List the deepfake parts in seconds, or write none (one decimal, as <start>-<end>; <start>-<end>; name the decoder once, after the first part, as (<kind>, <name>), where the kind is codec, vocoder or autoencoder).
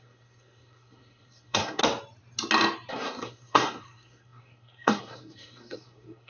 0.0-1.8 (codec, SNAC); 2.9-6.3